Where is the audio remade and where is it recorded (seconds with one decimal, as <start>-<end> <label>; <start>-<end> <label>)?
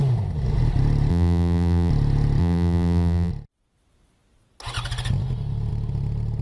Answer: 0.0-1.1 recorded; 1.1-1.9 remade; 1.9-2.4 recorded; 2.4-3.3 remade; 3.3-6.4 recorded